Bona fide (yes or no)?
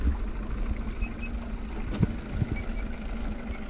yes